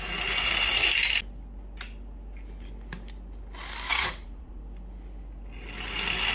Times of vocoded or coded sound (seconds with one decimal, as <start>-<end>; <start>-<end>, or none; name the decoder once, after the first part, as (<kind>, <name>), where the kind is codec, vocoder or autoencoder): 3.9-4.6 (vocoder, Vocos)